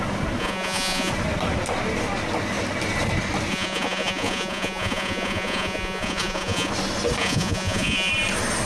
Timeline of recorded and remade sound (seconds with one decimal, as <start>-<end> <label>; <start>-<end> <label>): 0.0-0.4 recorded; 0.4-1.1 remade; 1.1-3.5 recorded; 3.5-6.7 remade; 6.7-7.2 recorded; 7.2-8.1 remade; 8.1-8.7 recorded